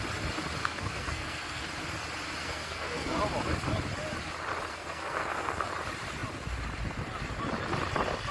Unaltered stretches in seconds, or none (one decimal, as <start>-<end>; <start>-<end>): 0.0-0.6; 1.6-2.4; 3.2-4.7; 5.7-8.3